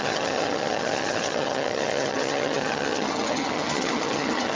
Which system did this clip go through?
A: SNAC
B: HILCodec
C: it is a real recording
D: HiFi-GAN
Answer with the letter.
D